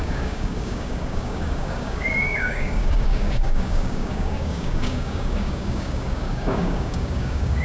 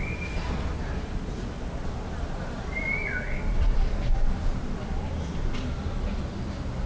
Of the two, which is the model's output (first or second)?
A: first